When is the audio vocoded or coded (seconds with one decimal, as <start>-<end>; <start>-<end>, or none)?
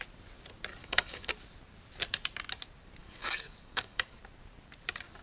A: 0.8-1.3; 3.0-4.2